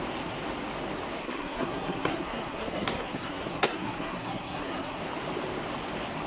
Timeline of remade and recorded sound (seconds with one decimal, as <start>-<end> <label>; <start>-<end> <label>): 0.0-1.2 recorded; 1.2-5.0 remade; 5.0-6.3 recorded